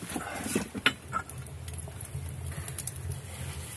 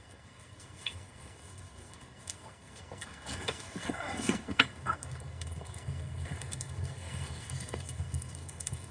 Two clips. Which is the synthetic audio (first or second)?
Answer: second